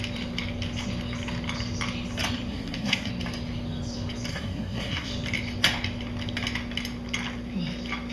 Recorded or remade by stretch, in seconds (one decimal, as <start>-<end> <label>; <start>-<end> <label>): 0.0-2.5 recorded; 2.5-3.1 remade; 3.1-4.3 recorded; 4.3-5.1 remade; 5.1-8.1 recorded